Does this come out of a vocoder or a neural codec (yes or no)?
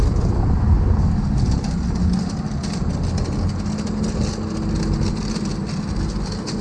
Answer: no